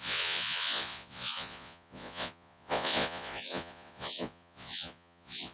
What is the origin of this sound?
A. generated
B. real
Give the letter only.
A